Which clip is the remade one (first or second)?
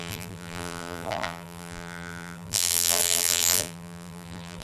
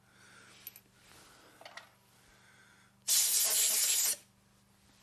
first